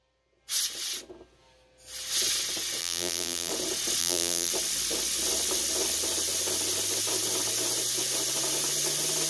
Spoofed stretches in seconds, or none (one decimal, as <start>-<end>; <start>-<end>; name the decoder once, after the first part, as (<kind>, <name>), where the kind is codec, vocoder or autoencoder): 2.8-3.5 (vocoder, BigVGAN v2); 4.0-4.5